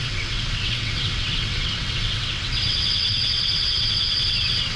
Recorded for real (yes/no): no